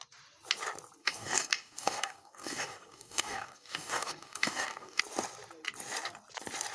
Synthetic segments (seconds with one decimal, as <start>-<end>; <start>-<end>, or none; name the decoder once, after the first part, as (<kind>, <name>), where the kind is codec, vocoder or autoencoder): 1.0-5.0 (codec, DAC)